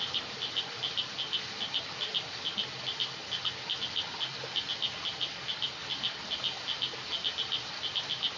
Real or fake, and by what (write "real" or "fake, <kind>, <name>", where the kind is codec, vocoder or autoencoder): real